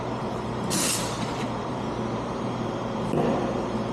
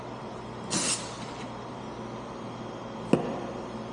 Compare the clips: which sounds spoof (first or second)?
first